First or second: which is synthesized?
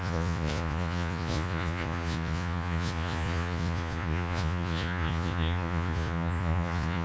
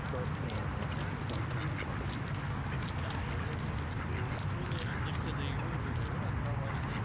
first